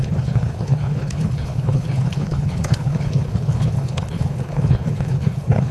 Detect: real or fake fake